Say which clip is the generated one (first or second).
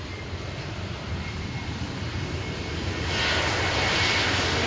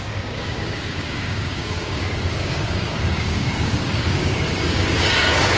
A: second